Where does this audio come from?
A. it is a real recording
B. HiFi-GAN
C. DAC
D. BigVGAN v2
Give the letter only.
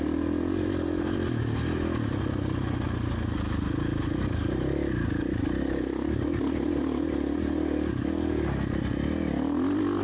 A